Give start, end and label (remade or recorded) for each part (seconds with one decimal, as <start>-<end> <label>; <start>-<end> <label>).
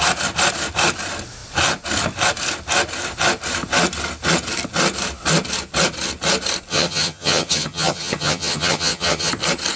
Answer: 0.0-6.7 recorded; 6.7-9.3 remade; 9.3-9.8 recorded